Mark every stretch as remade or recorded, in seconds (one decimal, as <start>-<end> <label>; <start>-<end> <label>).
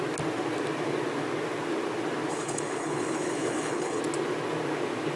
0.0-2.3 recorded; 2.3-4.0 remade; 4.0-5.2 recorded